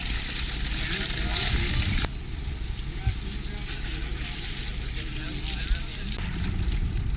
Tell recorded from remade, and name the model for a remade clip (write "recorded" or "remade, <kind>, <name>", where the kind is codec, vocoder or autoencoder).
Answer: recorded